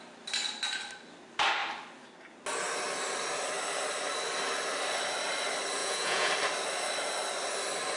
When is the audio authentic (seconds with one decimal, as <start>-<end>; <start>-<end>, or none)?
0.0-5.8; 6.3-8.0

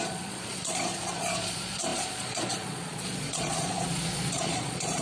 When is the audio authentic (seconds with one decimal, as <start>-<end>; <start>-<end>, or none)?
none

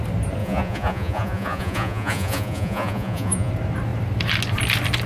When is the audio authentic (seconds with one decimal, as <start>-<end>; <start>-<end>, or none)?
0.0-0.4; 3.5-5.1